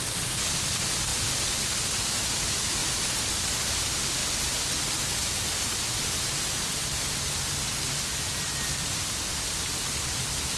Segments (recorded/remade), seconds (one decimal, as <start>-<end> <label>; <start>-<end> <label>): 0.0-10.6 recorded